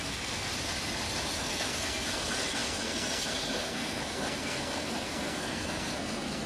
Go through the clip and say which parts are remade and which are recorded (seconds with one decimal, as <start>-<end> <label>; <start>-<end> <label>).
0.0-0.5 remade; 0.5-1.4 recorded; 1.4-6.5 remade